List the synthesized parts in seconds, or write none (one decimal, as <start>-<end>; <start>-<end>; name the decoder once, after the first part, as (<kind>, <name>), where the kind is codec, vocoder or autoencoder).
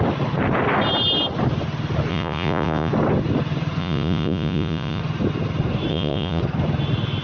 2.1-2.9 (vocoder, Vocos); 3.8-5.0; 5.9-6.4